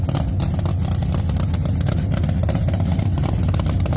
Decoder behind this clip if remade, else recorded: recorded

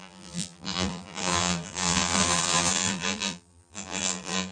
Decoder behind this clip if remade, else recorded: remade, vocoder, BigVGAN v2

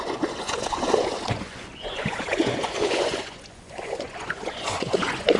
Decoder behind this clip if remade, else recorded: remade, vocoder, Vocos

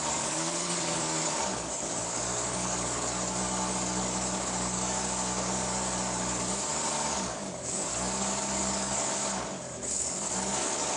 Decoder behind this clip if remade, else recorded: remade, codec, DAC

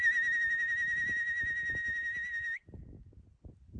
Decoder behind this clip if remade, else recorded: recorded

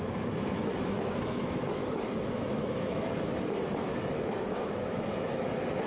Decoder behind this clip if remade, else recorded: remade, autoencoder, DAC-VAE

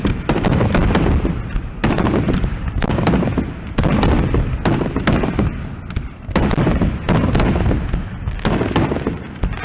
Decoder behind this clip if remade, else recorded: recorded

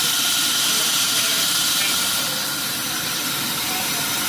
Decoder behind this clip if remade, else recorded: recorded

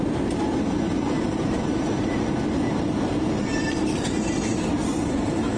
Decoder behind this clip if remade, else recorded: remade, vocoder, BigVGAN v2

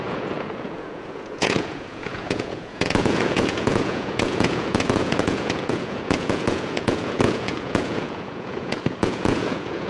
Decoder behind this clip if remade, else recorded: remade, vocoder, Vocos